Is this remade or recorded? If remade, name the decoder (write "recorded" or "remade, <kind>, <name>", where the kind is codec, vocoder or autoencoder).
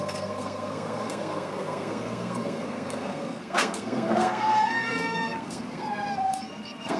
remade, codec, SNAC